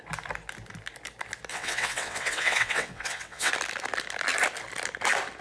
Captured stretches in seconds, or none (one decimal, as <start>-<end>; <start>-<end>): 0.0-1.5; 3.5-5.4

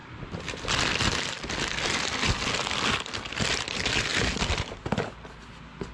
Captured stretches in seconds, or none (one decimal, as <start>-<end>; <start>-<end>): 0.0-5.9